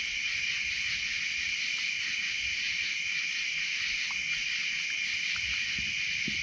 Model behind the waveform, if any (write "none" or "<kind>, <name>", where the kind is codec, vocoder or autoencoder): none